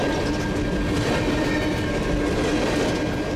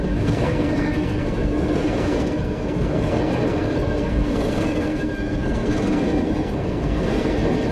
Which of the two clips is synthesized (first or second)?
second